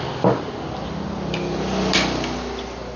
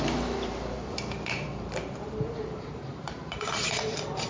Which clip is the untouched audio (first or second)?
first